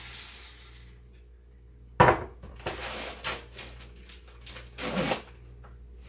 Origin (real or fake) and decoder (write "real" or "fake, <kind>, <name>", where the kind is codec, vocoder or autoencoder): real